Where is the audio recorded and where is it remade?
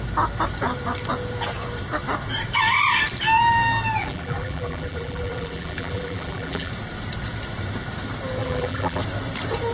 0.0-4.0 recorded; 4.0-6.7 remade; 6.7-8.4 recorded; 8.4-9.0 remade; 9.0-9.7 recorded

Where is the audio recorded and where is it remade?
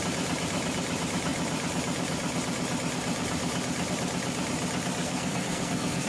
0.0-5.0 recorded; 5.0-6.1 remade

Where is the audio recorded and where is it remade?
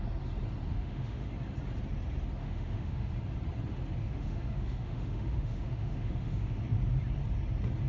0.0-0.7 recorded; 0.7-1.3 remade; 1.3-2.4 recorded; 2.4-3.1 remade; 3.1-4.0 recorded; 4.0-6.6 remade; 6.6-7.9 recorded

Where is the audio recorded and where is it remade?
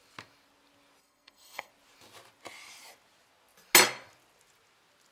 0.0-1.0 recorded; 1.0-1.7 remade; 1.7-5.1 recorded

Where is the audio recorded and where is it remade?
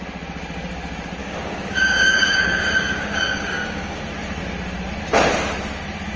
0.0-1.2 recorded; 1.2-4.0 remade; 4.0-6.2 recorded